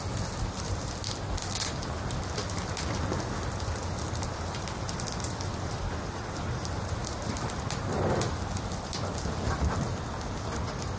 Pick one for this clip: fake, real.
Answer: real